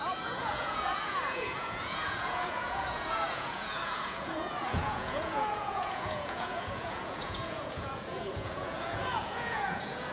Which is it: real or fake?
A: fake